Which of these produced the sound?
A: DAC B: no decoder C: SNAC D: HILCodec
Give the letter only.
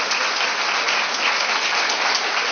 B